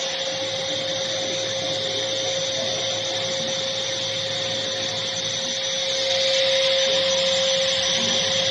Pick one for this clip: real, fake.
real